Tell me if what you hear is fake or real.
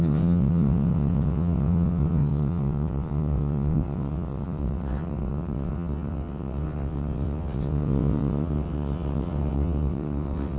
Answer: fake